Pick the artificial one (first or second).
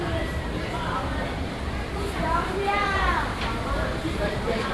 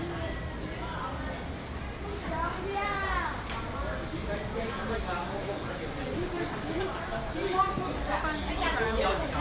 first